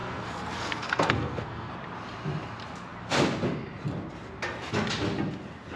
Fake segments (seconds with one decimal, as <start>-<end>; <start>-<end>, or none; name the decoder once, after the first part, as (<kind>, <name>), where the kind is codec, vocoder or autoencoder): 0.0-1.7 (codec, SNAC)

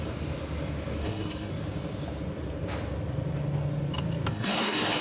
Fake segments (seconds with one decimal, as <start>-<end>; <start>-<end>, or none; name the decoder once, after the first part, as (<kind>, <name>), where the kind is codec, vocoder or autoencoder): 1.0-1.5 (codec, SNAC); 4.3-5.0

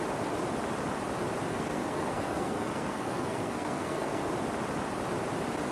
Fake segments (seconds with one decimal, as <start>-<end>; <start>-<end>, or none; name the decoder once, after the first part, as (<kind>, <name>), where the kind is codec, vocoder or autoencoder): 1.5-4.3 (codec, SNAC)

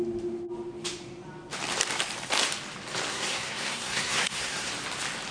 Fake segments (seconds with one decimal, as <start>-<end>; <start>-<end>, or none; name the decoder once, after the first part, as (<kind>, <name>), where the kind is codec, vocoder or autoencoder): 3.1-4.7 (codec, SNAC)

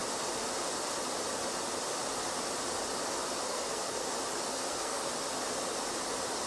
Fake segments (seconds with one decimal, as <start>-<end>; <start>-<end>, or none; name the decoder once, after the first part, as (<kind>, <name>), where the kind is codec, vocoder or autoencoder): 3.5-4.1 (codec, SNAC); 4.5-5.1